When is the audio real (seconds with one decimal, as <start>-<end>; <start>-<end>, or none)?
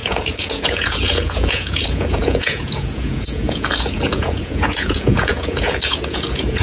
none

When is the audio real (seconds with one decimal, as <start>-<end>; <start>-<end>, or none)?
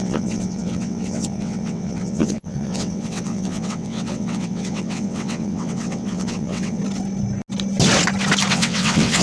6.8-8.5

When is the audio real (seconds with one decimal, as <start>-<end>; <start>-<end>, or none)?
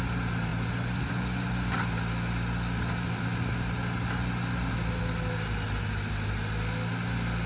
0.0-7.5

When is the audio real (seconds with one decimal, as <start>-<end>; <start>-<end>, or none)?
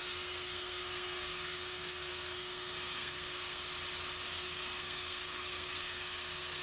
3.7-4.2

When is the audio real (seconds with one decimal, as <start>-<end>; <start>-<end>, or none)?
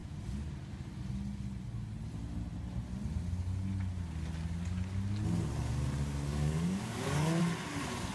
0.0-6.3; 7.4-8.1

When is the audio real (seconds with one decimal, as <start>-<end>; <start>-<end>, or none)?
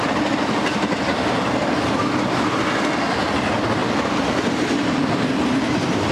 0.0-6.1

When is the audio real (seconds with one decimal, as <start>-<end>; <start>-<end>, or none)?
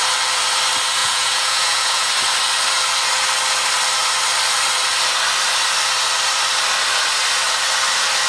0.0-1.0; 2.1-8.3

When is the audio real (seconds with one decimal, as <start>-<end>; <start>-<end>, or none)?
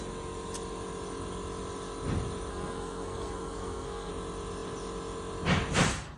0.0-2.5; 4.1-6.2